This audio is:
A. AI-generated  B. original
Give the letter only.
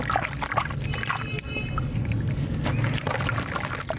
B